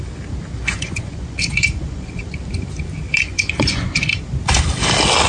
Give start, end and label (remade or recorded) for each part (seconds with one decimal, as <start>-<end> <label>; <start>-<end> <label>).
0.0-0.6 recorded; 0.6-2.4 remade; 2.4-3.3 recorded; 3.3-3.9 remade; 3.9-5.3 recorded